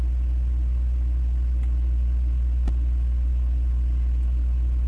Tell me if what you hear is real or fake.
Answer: real